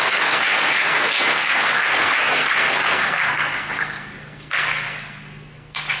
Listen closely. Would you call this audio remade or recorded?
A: remade